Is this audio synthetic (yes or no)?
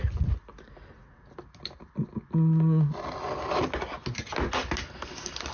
no